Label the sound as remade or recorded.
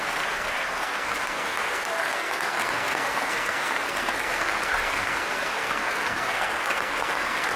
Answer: remade